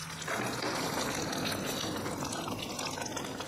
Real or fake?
real